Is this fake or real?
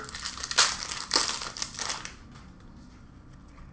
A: real